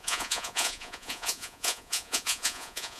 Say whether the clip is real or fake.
fake